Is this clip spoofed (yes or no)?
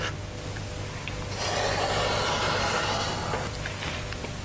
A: no